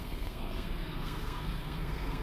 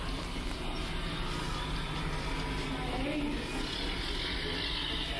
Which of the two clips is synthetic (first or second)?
first